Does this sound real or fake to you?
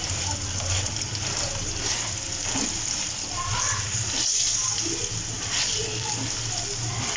real